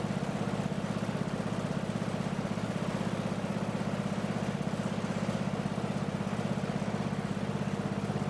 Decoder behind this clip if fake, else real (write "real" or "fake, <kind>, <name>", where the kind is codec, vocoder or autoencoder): real